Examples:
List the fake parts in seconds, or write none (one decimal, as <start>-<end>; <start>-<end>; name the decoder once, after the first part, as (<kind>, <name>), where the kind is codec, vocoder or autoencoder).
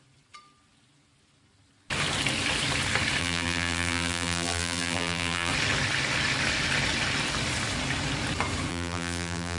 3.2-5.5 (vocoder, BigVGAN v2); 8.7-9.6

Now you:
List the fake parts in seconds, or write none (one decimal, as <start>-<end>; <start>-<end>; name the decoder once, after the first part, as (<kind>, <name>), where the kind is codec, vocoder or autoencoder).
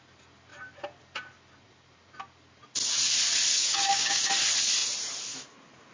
3.5-4.2 (codec, DAC)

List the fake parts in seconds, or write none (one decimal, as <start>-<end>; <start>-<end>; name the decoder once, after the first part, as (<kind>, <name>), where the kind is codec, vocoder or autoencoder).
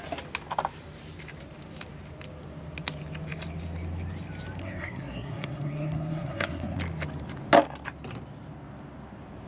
4.6-6.8 (codec, SNAC)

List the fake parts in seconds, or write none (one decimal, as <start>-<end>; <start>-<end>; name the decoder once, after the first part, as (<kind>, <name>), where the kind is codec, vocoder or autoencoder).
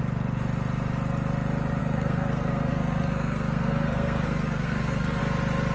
1.8-5.2 (codec, SNAC)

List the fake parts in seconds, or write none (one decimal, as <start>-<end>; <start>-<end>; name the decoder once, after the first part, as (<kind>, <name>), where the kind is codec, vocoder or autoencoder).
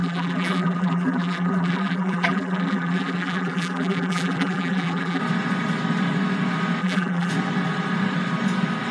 0.0-5.2 (vocoder, BigVGAN v2); 6.8-7.3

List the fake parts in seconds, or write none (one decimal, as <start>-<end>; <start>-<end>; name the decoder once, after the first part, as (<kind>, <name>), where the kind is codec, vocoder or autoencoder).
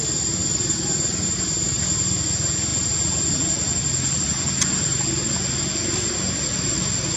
0.4-1.4 (vocoder, BigVGAN v2)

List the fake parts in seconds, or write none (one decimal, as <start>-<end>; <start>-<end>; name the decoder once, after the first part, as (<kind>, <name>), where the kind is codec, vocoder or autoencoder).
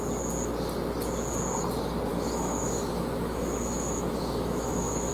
2.1-5.1 (autoencoder, DAC-VAE)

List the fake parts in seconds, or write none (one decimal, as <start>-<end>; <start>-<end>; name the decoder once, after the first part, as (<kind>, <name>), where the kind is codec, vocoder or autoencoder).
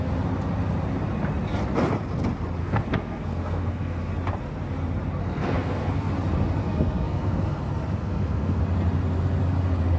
2.6-4.1 (codec, SNAC); 5.2-6.1; 6.6-7.6; 8.0-8.6